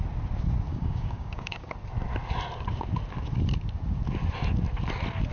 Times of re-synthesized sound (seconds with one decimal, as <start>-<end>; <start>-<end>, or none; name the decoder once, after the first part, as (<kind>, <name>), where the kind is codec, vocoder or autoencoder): 0.7-1.7 (codec, DAC)